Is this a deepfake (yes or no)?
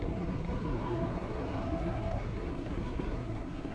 yes